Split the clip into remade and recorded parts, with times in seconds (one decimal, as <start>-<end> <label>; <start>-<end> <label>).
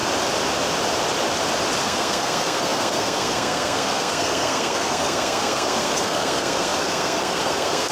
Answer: 0.0-1.8 recorded; 1.8-7.9 remade